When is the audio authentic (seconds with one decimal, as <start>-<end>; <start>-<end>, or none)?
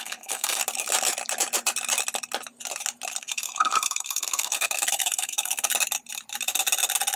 0.6-3.2; 5.7-7.2